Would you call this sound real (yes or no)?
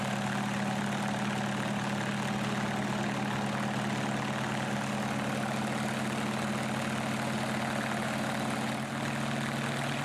yes